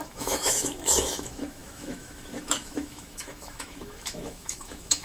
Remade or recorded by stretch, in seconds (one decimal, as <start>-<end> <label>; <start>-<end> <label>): 0.0-5.0 remade